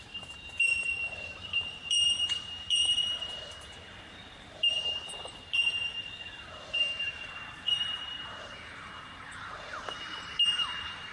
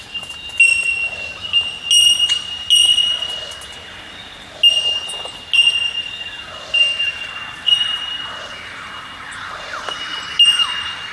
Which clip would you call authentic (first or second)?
second